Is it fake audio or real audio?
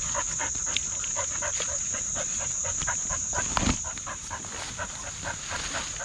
real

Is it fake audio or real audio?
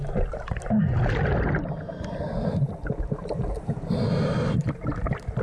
real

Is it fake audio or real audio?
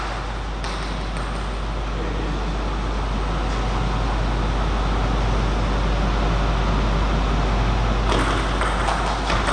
real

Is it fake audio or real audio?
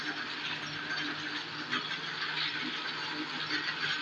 real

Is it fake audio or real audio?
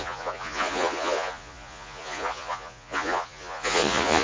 fake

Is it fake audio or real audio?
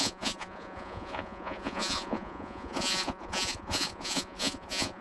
fake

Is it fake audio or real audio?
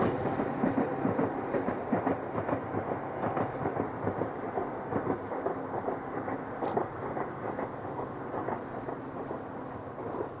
real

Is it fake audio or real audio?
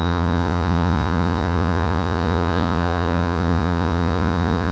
fake